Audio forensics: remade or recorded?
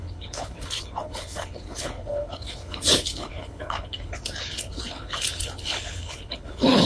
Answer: remade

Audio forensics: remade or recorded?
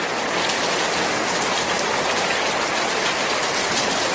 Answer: recorded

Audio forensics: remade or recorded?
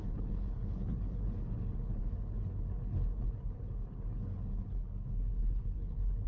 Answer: remade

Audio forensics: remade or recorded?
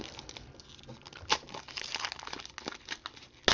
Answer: recorded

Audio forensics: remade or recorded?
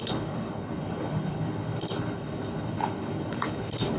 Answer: remade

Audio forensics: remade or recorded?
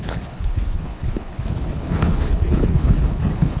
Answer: remade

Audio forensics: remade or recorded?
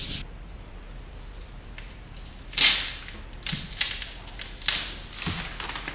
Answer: recorded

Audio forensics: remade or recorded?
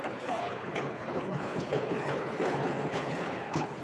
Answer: remade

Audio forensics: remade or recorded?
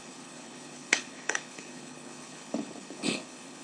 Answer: remade